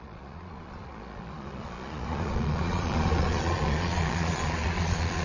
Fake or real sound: fake